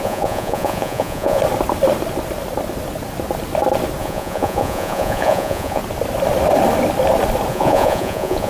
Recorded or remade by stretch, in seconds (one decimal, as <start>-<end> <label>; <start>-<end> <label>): 0.0-1.4 remade; 1.4-4.0 recorded; 4.0-5.8 remade; 5.8-7.5 recorded; 7.5-8.5 remade